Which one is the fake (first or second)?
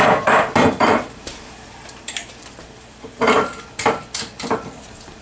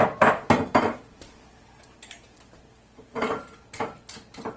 first